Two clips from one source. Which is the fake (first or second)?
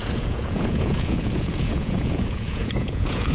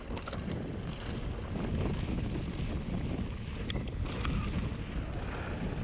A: first